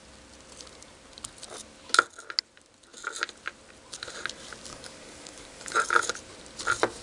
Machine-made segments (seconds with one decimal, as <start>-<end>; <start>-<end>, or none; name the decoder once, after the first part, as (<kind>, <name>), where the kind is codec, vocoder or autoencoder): 4.7-6.1 (codec, DAC)

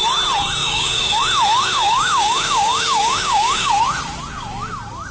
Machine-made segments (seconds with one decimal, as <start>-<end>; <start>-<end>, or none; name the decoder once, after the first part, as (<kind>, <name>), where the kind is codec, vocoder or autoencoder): 0.6-1.2 (codec, DAC); 1.6-3.7

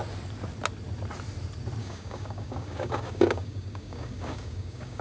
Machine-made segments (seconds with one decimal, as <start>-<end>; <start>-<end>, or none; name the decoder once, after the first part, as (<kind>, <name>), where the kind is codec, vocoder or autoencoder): 1.8-5.0 (codec, DAC)

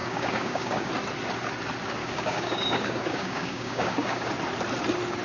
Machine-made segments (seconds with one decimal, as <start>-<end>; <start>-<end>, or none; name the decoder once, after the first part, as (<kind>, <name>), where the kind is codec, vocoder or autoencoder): 0.0-0.9 (codec, DAC); 2.0-4.3

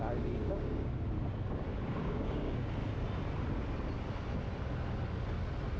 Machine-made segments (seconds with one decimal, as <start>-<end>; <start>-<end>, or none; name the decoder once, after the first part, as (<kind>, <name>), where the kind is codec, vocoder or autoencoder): 0.4-0.9 (codec, DAC); 2.0-2.7

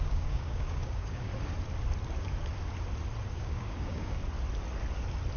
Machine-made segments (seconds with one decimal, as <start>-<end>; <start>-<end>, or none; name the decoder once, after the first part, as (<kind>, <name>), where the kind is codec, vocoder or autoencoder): 0.0-1.3 (codec, DAC); 3.3-4.2